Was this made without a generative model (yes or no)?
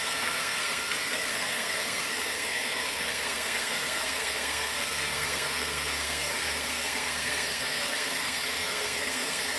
no